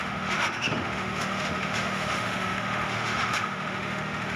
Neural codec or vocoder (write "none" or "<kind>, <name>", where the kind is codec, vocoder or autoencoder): autoencoder, DAC-VAE